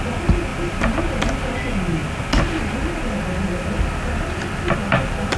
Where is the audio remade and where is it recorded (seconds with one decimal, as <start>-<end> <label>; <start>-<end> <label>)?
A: 0.0-5.4 recorded